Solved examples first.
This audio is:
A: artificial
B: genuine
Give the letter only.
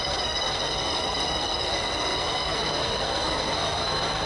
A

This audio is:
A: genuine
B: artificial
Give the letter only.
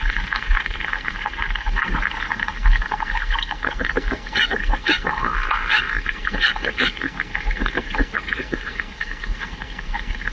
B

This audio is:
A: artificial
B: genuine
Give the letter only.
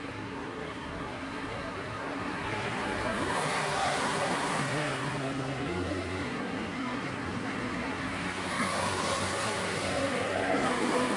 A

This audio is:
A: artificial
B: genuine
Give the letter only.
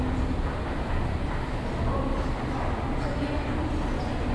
B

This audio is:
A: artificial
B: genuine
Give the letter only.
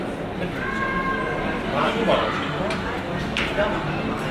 B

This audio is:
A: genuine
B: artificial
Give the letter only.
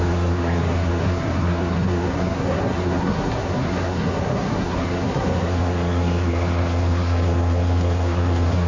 B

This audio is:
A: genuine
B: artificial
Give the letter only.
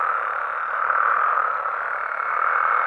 A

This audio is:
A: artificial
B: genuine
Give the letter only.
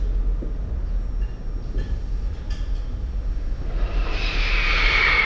B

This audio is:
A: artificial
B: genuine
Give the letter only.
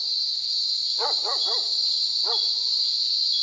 B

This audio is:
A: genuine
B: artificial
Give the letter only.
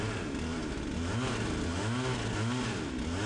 A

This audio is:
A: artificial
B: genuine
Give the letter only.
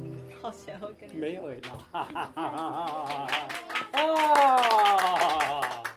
B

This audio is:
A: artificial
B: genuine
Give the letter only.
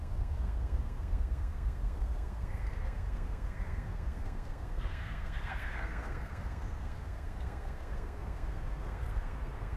A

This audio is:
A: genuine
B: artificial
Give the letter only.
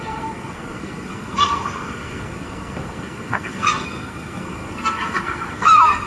B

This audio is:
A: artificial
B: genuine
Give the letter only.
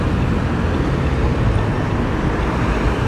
B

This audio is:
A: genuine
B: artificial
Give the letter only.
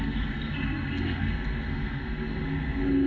B